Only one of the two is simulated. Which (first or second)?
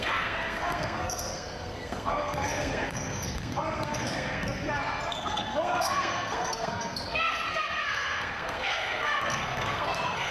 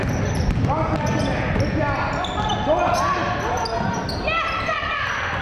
first